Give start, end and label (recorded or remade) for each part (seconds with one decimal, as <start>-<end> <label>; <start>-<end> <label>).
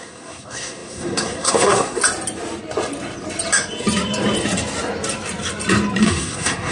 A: 0.0-2.0 remade; 2.0-6.0 recorded; 6.0-6.7 remade